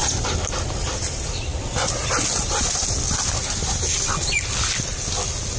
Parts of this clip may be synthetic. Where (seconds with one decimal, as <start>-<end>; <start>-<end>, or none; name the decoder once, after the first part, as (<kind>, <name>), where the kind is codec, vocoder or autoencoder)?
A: none

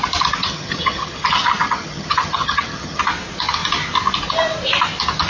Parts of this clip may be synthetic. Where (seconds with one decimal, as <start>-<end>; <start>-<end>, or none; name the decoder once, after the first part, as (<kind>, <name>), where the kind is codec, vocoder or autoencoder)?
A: 0.4-3.0 (vocoder, HiFi-GAN)